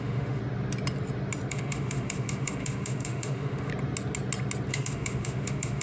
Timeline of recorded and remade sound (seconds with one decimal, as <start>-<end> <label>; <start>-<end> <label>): 0.0-0.4 remade; 0.4-1.5 recorded; 1.5-3.7 remade; 3.7-4.7 recorded; 4.7-5.8 remade